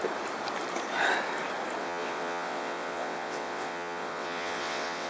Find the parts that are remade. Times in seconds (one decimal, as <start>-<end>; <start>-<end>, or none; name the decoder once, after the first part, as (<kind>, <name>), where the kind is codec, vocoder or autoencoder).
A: 1.8-5.1 (vocoder, WaveNeXt)